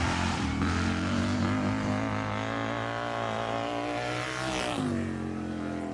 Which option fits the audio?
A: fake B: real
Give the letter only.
B